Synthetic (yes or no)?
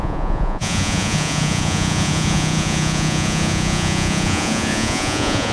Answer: yes